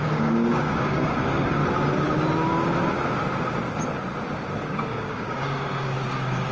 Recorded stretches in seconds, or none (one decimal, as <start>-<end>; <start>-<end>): 1.6-4.7